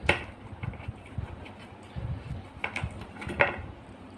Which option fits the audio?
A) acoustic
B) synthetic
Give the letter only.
B